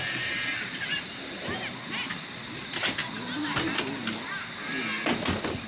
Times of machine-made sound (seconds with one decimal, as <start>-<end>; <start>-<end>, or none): 0.0-0.9; 1.8-3.0